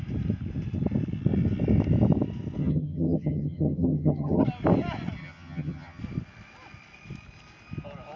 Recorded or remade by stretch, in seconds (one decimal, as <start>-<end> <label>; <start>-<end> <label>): 0.0-2.6 recorded; 2.6-4.4 remade; 4.4-5.2 recorded; 5.2-6.0 remade; 6.0-8.2 recorded